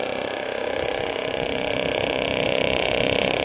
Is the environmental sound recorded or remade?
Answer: remade